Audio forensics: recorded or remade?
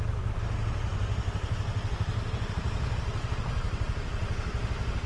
recorded